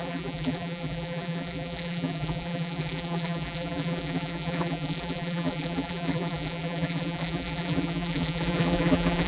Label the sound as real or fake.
fake